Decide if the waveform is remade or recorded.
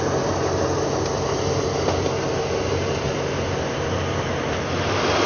recorded